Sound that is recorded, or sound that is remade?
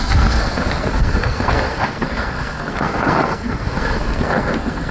remade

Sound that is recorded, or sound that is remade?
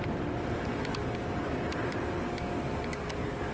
recorded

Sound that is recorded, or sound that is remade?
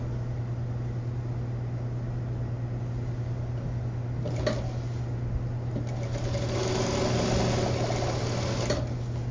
recorded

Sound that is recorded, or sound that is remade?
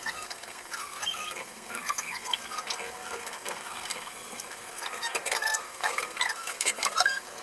remade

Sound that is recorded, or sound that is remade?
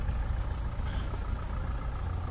recorded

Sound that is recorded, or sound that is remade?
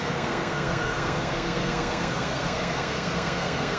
remade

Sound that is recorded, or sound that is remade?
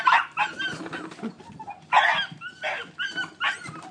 recorded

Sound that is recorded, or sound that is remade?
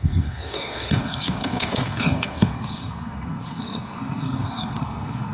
remade